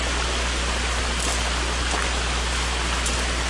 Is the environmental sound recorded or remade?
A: recorded